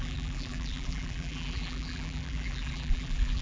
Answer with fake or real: fake